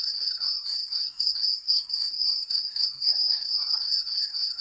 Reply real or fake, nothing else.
fake